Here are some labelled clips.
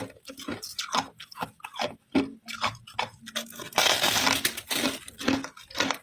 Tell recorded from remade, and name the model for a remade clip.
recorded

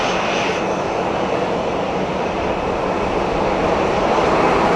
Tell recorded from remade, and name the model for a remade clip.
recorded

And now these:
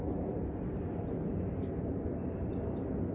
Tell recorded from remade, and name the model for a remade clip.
recorded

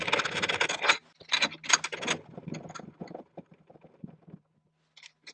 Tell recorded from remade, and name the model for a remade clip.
recorded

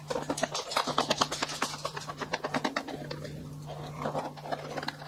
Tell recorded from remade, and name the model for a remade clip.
recorded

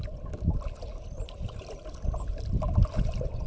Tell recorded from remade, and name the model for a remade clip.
recorded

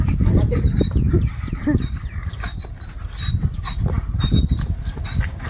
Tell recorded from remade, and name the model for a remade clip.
recorded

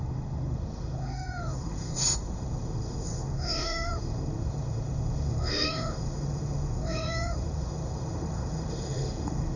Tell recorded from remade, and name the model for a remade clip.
remade, autoencoder, DAC-VAE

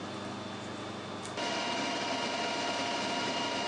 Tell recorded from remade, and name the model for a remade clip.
recorded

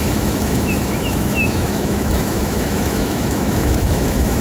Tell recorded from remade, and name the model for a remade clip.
remade, autoencoder, DAC-VAE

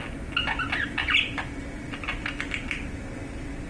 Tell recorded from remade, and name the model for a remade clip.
recorded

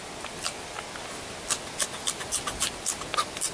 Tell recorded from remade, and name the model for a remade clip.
recorded